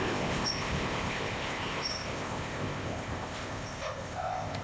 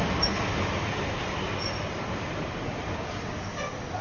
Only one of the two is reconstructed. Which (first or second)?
first